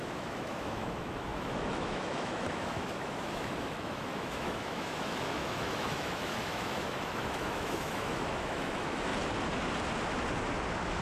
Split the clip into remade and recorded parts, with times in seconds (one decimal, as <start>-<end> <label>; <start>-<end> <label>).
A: 0.0-9.1 remade; 9.1-11.0 recorded